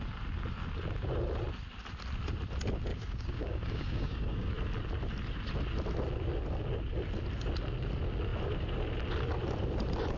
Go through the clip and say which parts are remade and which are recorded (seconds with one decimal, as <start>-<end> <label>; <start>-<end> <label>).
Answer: 0.0-2.9 recorded; 2.9-4.5 remade; 4.5-10.2 recorded